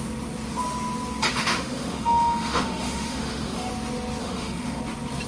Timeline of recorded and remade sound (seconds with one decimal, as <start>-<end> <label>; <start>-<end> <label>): 0.0-1.3 recorded; 1.3-3.7 remade; 3.7-4.2 recorded; 4.2-4.8 remade; 4.8-5.3 recorded